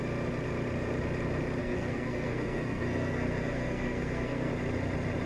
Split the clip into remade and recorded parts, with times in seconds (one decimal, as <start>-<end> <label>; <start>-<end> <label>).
0.0-1.6 recorded; 1.6-4.5 remade; 4.5-5.3 recorded